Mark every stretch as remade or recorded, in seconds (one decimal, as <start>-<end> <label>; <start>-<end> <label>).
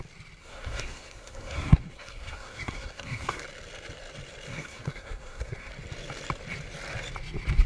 0.0-0.4 recorded; 0.4-3.4 remade; 3.4-4.5 recorded; 4.5-5.7 remade; 5.7-7.7 recorded